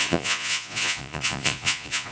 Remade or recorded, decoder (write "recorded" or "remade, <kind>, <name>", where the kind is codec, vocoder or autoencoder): remade, vocoder, Vocos